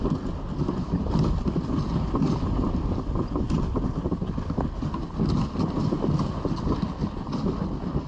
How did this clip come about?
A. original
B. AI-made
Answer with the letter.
A